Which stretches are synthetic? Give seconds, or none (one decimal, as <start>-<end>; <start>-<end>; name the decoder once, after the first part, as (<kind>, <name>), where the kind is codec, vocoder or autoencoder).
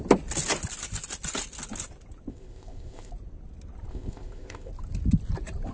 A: 2.3-3.1 (codec, ZipCodec); 3.9-4.7